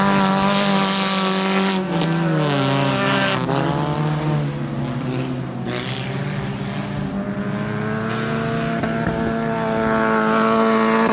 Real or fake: real